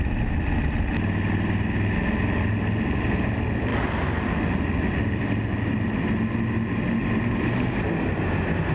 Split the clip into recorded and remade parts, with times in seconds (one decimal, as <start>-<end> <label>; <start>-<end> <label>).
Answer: 0.0-8.7 recorded